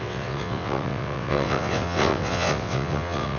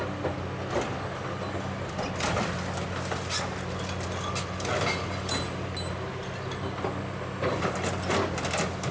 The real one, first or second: second